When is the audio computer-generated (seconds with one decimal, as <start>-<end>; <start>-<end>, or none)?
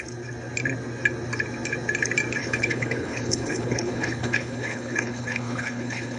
2.4-6.2